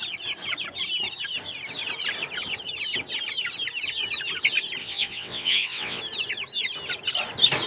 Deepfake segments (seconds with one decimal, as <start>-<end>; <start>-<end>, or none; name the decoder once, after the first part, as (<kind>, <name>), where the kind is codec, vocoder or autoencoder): 4.8-6.0 (vocoder, WaveNeXt)